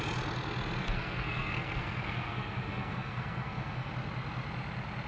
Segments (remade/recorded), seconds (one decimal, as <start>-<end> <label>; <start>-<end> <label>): 0.0-0.8 recorded; 0.8-3.9 remade; 3.9-5.1 recorded